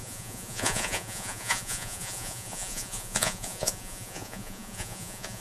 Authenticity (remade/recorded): remade